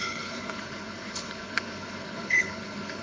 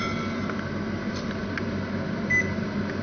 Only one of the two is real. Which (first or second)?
second